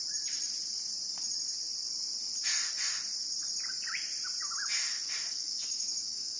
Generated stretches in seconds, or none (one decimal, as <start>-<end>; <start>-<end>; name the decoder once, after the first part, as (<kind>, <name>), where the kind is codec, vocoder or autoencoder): 5.3-6.4 (autoencoder, DAC-VAE)